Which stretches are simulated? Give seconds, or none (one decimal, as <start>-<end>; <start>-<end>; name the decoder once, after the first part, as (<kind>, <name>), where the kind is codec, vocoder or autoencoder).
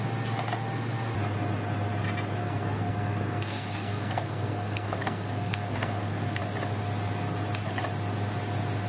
2.4-6.4 (codec, SNAC)